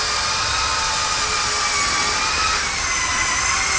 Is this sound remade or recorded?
recorded